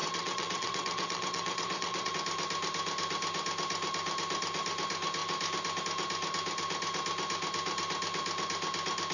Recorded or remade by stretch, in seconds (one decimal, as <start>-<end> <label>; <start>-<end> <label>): 0.0-2.1 remade; 2.1-9.1 recorded